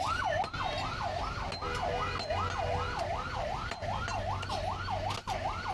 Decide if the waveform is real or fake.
real